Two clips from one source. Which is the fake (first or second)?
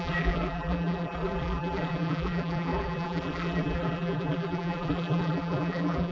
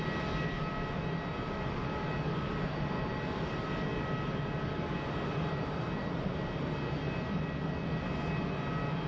first